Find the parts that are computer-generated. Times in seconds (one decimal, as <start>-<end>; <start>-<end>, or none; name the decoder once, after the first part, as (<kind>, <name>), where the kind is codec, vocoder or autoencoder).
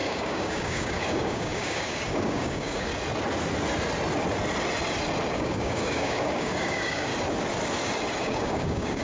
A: 0.0-2.9 (codec, DAC); 5.3-7.1; 8.2-9.0